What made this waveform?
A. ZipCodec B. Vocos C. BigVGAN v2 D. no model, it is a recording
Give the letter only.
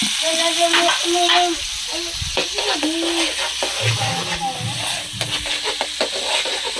D